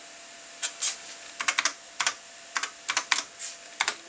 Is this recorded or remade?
recorded